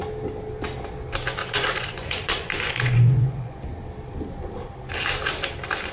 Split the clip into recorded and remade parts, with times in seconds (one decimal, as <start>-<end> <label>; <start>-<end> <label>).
0.0-1.4 recorded; 1.4-3.7 remade; 3.7-5.9 recorded